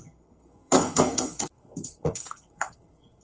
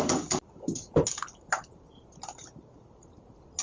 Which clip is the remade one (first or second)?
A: first